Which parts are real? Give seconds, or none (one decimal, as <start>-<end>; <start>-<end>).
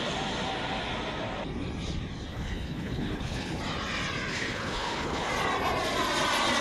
0.0-2.3; 3.6-4.3; 5.3-6.6